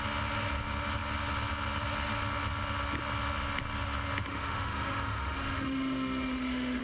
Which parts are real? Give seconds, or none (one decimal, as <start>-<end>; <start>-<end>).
0.0-4.2